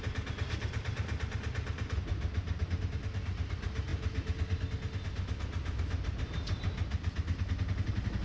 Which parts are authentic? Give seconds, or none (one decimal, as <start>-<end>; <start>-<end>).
0.0-8.2